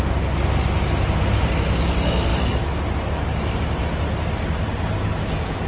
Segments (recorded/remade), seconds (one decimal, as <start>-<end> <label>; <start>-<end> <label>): 0.0-5.7 recorded